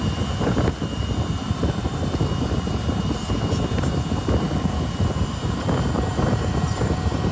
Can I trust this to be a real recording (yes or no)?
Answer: no